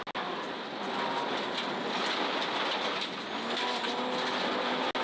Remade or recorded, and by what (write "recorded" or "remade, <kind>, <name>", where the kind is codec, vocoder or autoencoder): recorded